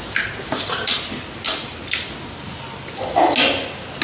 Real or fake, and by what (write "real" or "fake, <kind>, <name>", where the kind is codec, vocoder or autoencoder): real